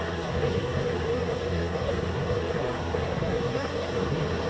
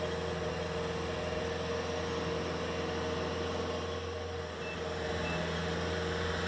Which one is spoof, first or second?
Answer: first